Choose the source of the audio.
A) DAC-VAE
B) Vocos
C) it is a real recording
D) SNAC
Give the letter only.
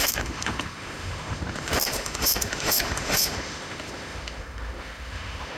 A